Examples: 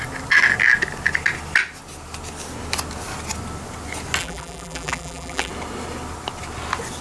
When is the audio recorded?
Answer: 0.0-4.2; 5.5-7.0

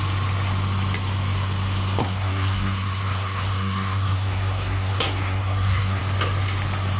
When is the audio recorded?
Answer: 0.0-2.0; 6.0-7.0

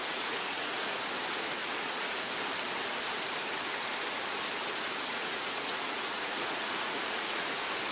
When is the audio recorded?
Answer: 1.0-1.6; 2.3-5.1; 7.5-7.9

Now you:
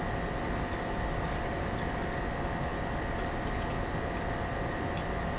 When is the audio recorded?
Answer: 0.0-5.4